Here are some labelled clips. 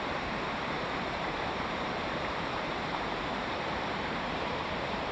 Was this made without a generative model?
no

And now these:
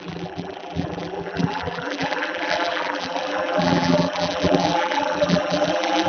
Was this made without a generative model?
no